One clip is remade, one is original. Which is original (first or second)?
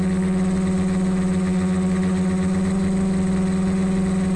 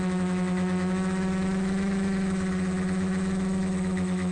first